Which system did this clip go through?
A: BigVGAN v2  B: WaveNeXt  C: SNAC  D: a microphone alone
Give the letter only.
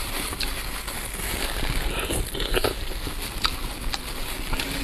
D